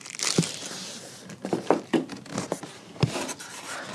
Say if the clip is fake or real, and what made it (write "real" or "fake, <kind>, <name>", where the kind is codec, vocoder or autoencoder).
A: real